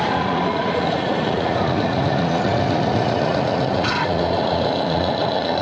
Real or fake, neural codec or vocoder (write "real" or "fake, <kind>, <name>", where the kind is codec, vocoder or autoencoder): fake, vocoder, Vocos